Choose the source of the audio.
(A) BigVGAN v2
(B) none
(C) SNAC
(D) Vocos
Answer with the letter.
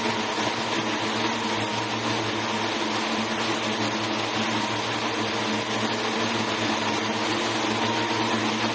B